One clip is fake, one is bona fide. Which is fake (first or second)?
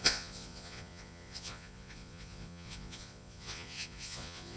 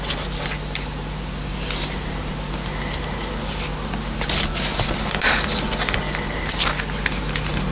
first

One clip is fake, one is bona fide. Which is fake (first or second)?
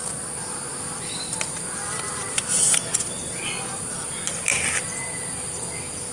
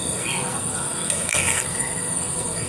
second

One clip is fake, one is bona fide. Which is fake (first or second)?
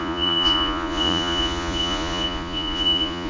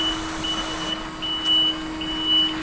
first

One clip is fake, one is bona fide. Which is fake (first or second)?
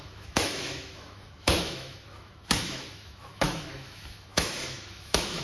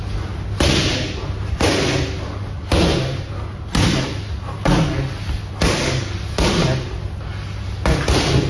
first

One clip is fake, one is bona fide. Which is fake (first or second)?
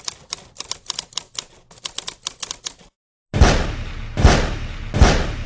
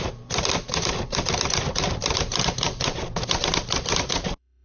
second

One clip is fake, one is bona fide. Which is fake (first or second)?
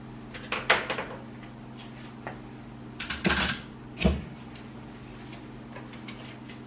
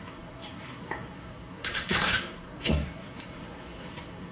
second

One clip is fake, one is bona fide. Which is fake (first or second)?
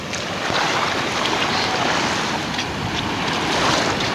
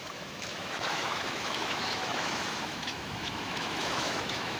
second